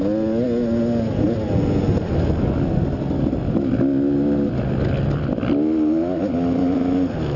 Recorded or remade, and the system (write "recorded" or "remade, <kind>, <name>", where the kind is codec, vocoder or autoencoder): recorded